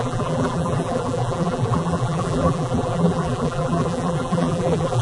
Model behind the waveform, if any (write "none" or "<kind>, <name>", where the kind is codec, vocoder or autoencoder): vocoder, BigVGAN v2